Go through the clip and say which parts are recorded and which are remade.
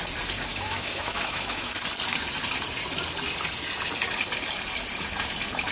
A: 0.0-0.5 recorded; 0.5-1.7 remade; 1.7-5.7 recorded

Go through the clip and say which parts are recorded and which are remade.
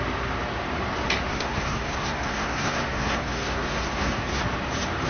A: 0.0-1.3 recorded; 1.3-4.4 remade; 4.4-5.1 recorded